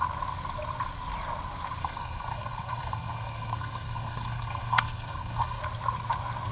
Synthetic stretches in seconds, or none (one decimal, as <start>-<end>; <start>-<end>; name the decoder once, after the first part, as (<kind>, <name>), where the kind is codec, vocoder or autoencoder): 1.8-5.6 (codec, SNAC)